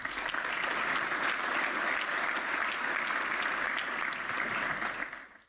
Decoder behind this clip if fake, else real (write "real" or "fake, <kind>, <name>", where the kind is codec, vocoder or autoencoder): real